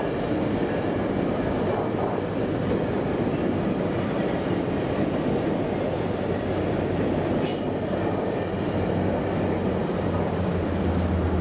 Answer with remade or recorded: recorded